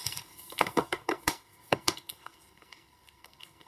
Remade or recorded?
remade